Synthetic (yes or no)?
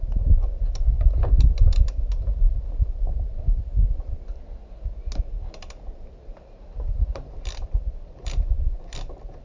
no